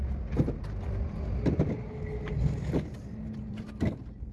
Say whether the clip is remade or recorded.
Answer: recorded